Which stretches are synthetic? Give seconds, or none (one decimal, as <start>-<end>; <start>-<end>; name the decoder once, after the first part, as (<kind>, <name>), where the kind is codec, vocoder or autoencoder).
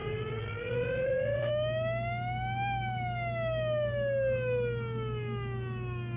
0.0-1.5 (vocoder, WaveNeXt)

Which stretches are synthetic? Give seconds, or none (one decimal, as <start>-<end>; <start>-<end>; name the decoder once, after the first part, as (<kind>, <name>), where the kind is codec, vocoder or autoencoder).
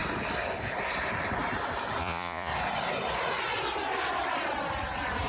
2.0-2.5 (vocoder, Vocos)